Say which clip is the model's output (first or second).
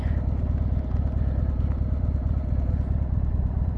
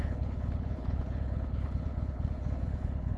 second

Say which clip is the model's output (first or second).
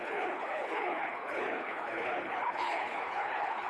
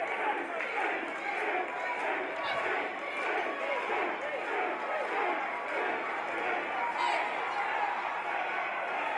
first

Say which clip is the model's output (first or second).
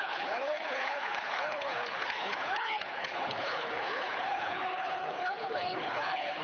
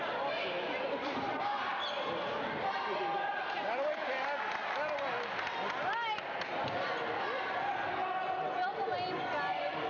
first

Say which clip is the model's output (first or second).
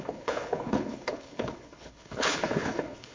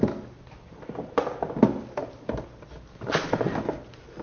first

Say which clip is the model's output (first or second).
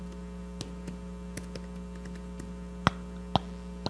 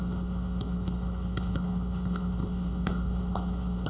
second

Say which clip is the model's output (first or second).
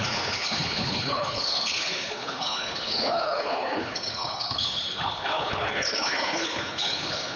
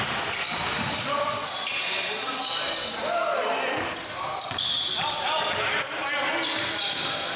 first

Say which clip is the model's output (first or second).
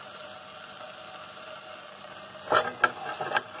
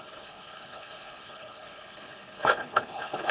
second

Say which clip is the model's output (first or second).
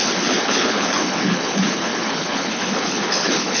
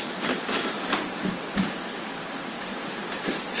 first